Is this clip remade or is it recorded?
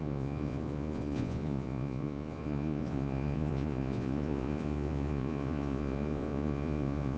remade